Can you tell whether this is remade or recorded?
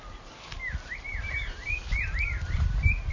recorded